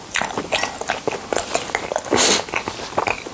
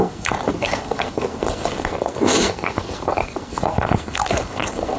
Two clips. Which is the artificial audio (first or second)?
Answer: second